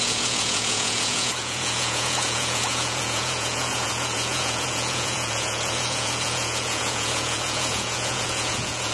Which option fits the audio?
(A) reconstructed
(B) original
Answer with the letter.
A